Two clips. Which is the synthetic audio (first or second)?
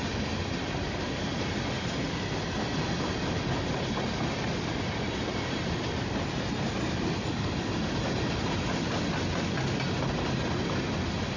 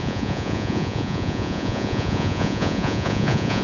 second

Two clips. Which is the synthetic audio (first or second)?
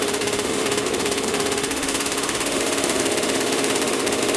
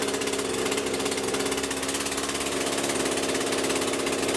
first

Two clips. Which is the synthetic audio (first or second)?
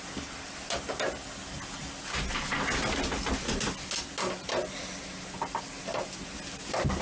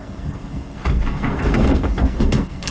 second